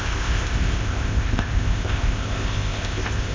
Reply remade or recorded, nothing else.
remade